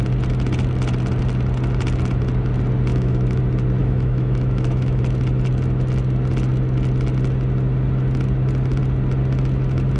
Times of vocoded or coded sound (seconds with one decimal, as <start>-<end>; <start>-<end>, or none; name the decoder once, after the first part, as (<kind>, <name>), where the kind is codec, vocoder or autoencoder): 2.9-3.4 (autoencoder, DAC-VAE); 3.8-5.0